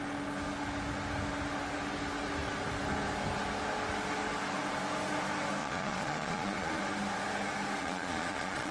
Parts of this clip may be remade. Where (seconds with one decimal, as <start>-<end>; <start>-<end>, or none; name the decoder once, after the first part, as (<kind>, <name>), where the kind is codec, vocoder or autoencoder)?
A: 5.6-6.8 (vocoder, Vocos); 7.8-8.7